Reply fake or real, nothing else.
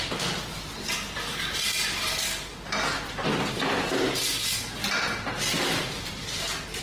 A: real